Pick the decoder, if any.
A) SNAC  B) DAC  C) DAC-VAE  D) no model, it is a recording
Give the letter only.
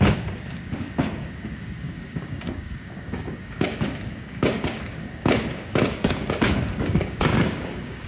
B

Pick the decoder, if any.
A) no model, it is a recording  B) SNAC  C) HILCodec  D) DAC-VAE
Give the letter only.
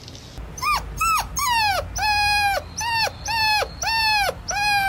A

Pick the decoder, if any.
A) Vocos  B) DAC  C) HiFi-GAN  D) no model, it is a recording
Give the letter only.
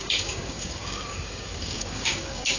B